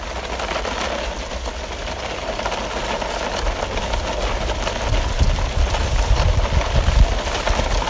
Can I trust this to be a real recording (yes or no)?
yes